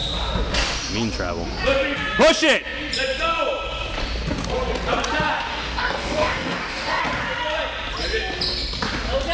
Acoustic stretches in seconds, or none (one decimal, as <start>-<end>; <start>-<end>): 0.0-5.5; 7.0-9.3